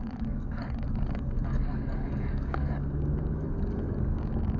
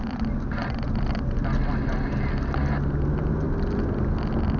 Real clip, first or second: second